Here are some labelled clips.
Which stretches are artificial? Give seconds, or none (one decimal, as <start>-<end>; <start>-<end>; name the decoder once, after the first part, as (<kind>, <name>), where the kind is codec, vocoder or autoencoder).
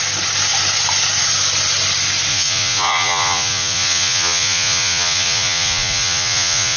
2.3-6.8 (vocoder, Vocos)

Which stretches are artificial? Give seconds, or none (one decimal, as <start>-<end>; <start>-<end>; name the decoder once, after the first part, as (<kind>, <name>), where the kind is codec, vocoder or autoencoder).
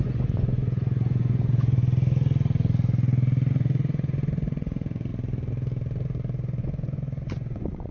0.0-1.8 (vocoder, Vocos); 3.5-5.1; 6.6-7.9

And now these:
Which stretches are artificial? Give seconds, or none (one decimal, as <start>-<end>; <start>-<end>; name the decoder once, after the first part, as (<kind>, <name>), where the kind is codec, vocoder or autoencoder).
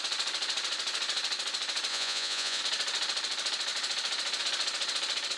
1.9-2.6 (vocoder, Vocos)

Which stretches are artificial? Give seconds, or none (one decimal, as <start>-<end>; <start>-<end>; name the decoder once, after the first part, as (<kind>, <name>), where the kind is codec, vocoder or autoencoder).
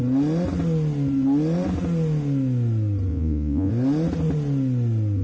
3.1-3.7 (vocoder, Vocos)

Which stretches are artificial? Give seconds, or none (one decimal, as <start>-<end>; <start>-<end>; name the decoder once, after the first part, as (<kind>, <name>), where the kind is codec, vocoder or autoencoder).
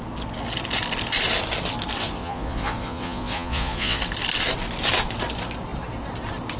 2.0-4.0 (vocoder, Vocos)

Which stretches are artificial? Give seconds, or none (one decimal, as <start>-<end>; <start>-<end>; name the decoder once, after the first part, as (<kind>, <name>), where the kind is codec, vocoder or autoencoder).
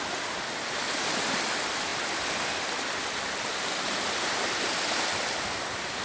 none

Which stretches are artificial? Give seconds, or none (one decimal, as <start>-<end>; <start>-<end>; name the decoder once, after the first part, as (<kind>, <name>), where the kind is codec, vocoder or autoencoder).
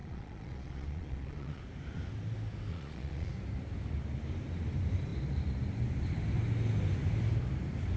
0.0-1.6 (vocoder, Vocos); 2.7-3.3